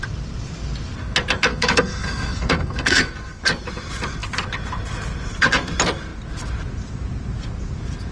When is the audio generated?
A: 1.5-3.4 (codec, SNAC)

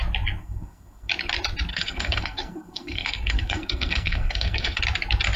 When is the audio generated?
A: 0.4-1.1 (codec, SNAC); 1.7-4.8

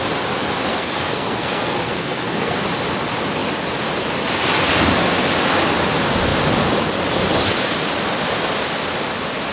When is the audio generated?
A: 0.7-2.6 (codec, SNAC)

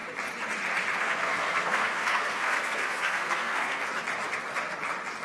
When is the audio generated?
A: 1.0-3.8 (codec, SNAC)